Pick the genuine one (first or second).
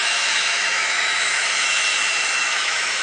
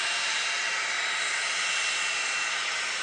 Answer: second